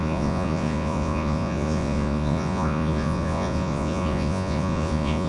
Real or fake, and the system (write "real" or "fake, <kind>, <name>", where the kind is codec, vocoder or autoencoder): fake, vocoder, Vocos